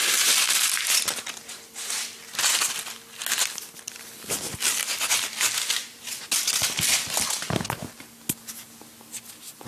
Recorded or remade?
recorded